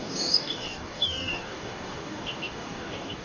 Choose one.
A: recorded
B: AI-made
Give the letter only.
B